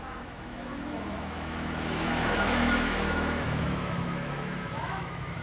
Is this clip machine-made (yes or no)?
yes